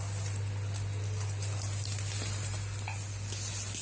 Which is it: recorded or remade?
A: recorded